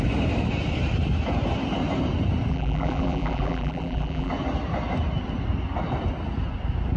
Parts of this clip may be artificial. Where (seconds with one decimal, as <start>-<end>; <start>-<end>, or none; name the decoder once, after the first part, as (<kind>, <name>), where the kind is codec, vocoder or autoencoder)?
2.5-4.3 (vocoder, BigVGAN v2)